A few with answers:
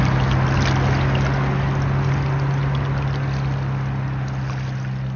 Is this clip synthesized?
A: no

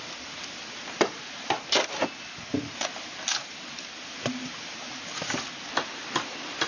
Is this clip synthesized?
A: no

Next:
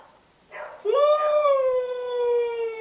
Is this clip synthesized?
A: no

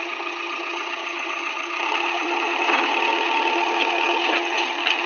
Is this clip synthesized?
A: yes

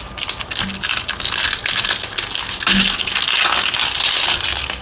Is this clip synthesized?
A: no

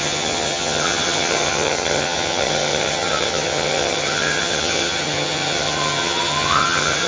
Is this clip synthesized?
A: yes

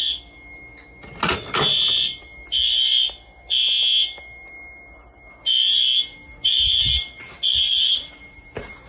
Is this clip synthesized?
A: no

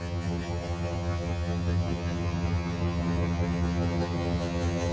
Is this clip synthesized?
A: yes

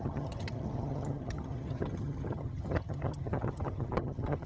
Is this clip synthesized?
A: yes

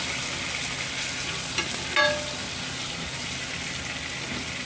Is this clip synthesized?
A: no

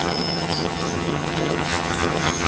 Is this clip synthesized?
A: yes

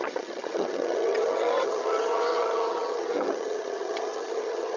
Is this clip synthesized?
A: yes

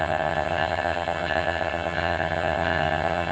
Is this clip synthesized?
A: yes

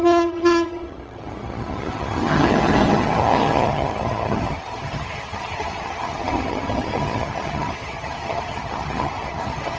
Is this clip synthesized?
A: yes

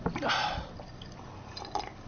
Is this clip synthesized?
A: no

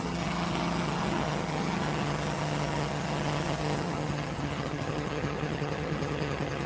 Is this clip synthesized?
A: yes